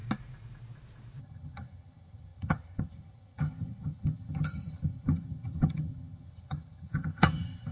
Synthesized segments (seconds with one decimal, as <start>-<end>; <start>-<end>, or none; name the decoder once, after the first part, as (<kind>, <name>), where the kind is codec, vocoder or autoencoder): 1.2-7.7 (vocoder, HiFi-GAN)